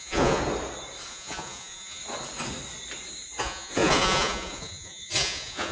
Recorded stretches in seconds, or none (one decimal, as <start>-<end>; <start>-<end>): 0.4-1.1; 2.0-3.4